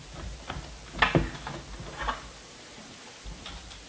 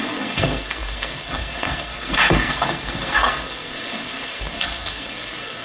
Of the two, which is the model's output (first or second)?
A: second